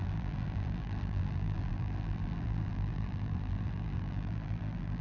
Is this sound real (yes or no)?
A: no